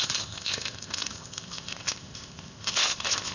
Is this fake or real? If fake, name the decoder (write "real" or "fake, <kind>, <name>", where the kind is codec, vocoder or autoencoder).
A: fake, codec, ZipCodec